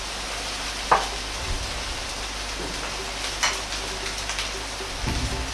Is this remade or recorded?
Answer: recorded